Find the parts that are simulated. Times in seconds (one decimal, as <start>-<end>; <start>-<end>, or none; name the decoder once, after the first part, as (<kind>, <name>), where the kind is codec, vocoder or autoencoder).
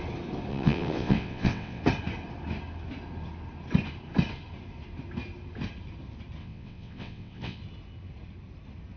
0.5-1.8 (vocoder, WaveNeXt); 6.4-7.6